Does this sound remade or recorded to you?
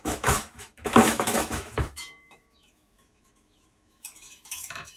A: remade